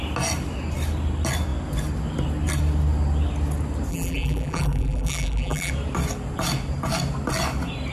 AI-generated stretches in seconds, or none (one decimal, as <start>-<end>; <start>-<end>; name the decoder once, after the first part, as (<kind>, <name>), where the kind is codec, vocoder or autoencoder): 3.9-5.7 (vocoder, BigVGAN v2)